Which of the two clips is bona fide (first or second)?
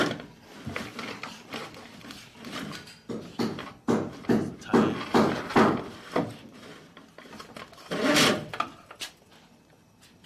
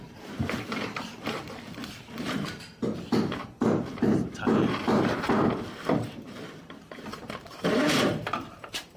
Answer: first